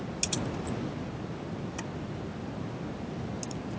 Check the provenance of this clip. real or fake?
real